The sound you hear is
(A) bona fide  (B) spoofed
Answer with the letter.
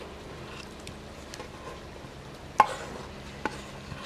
A